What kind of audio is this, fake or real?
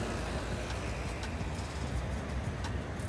real